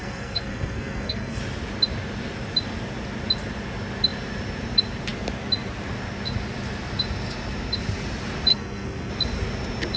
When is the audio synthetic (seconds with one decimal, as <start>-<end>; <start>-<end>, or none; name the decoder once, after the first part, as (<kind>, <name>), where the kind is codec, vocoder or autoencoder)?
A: 0.0-1.4 (codec, SNAC); 8.5-9.1